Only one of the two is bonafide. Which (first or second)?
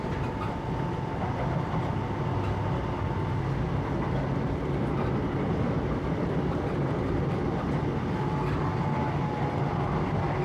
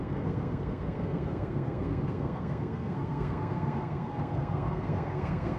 first